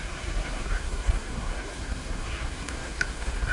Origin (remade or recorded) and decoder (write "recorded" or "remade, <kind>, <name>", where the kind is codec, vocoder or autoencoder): remade, codec, SNAC